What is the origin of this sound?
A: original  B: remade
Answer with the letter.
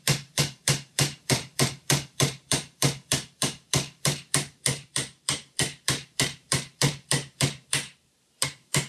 B